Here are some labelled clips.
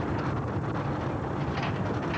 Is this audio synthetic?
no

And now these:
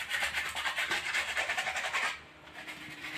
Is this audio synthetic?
yes